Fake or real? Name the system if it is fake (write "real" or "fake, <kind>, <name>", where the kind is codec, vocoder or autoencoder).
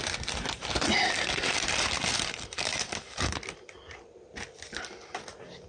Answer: fake, vocoder, BigVGAN v2